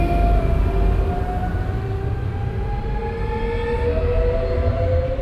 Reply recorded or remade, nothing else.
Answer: recorded